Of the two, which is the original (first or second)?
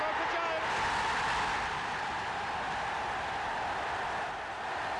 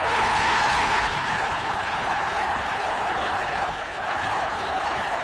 first